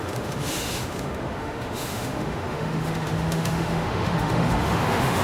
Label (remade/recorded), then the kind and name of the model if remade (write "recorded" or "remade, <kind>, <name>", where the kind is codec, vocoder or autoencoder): remade, autoencoder, DAC-VAE